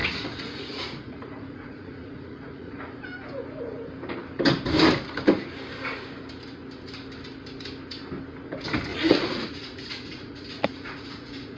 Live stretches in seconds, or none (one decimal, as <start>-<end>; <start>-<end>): 2.8-8.9